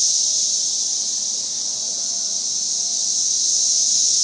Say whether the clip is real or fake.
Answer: real